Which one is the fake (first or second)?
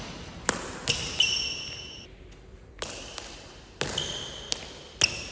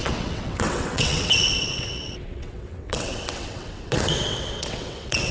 second